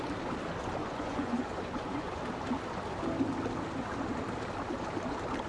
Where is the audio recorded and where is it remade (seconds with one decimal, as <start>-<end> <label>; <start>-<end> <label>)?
0.0-0.8 recorded; 0.8-2.2 remade; 2.2-5.5 recorded